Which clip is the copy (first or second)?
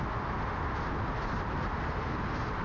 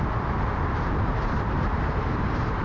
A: second